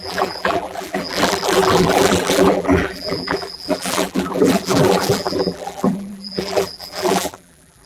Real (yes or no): no